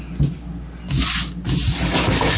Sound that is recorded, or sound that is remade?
recorded